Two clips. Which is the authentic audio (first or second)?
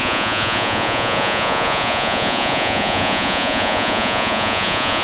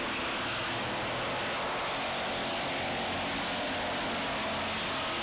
second